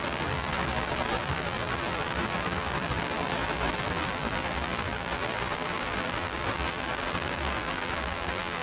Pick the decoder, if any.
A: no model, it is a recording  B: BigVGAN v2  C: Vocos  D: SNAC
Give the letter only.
B